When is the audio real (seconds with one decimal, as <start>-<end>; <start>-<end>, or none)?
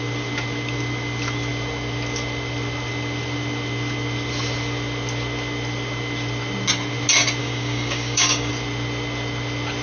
0.0-7.4; 8.5-9.8